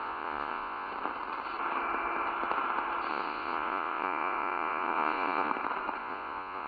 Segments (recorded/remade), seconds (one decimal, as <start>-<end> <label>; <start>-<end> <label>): 0.0-0.9 remade; 0.9-3.1 recorded; 3.1-5.5 remade; 5.5-6.0 recorded; 6.0-6.7 remade